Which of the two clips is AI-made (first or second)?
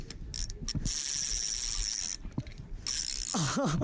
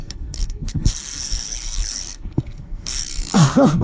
second